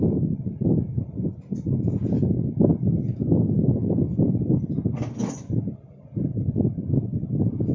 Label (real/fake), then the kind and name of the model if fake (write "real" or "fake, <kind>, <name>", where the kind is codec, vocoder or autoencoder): real